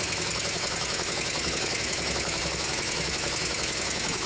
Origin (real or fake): fake